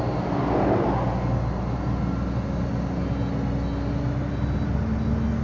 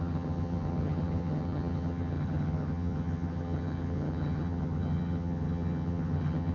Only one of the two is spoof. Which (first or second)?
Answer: second